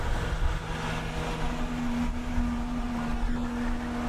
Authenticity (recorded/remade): recorded